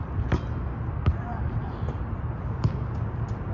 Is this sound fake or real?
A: real